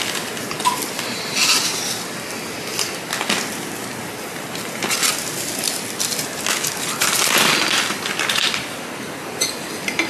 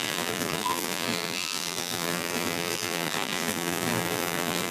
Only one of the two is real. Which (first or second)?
first